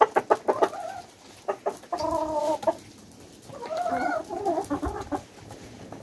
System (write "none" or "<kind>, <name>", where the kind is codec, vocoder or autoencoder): none